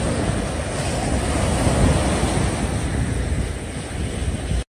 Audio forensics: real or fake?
real